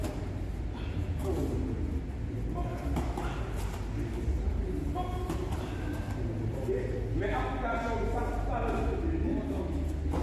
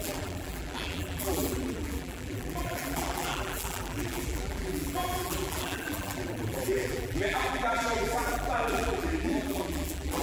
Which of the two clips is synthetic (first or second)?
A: second